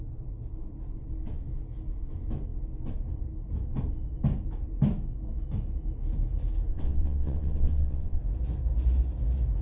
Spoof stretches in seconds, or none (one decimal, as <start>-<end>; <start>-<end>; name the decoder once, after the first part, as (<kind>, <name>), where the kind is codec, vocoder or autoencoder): 6.7-8.2 (vocoder, WaveNeXt)